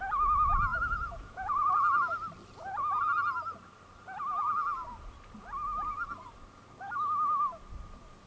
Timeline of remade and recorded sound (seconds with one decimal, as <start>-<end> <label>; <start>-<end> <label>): 0.0-0.7 recorded; 0.7-1.7 remade; 1.7-8.3 recorded